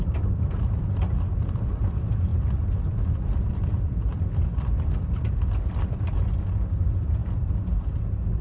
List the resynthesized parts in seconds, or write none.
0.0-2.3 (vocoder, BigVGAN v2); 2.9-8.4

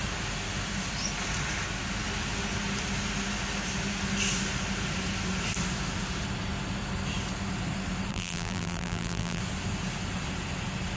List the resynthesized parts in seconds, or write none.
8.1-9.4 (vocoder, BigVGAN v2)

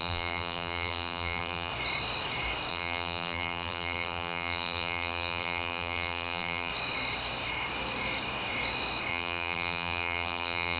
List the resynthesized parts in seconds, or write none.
0.0-1.7 (vocoder, BigVGAN v2); 2.7-6.7; 9.1-10.8

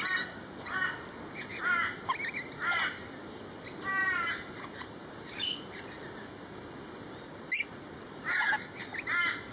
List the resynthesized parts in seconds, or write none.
4.0-5.8 (vocoder, BigVGAN v2)

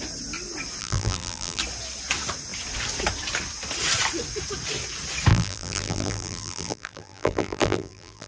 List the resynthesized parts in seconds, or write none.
0.8-1.6 (vocoder, BigVGAN v2); 5.3-8.3

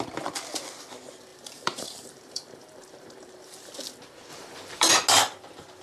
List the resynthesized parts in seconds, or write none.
1.3-3.7 (vocoder, BigVGAN v2); 4.3-4.9